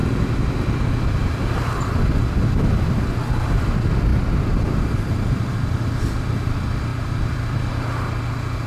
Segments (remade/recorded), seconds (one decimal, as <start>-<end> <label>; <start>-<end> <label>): 0.0-2.1 remade; 2.1-4.1 recorded; 4.1-5.2 remade; 5.2-6.9 recorded; 6.9-7.7 remade; 7.7-8.7 recorded